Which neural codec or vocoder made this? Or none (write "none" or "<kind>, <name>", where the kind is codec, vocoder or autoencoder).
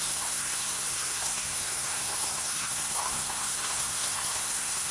codec, SNAC